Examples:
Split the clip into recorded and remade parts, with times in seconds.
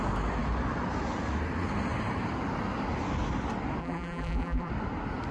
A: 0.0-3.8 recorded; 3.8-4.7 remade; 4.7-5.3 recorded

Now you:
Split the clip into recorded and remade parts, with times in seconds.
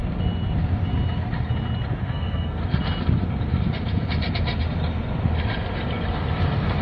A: 0.0-2.0 recorded; 2.0-2.6 remade; 2.6-6.8 recorded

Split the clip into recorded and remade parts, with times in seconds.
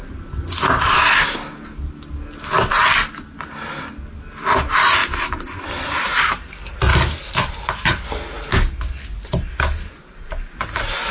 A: 0.0-5.0 recorded; 5.0-6.3 remade; 6.3-6.9 recorded; 6.9-7.6 remade; 7.6-11.1 recorded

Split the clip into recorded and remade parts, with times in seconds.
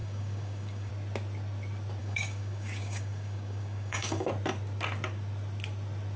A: 0.0-0.9 remade; 0.9-2.0 recorded; 2.0-4.3 remade; 4.3-6.2 recorded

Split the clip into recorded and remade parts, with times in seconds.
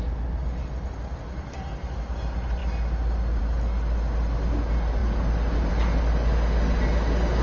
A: 0.0-7.4 recorded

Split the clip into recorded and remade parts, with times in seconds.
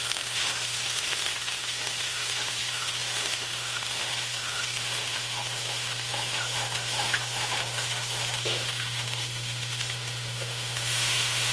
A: 0.0-11.5 remade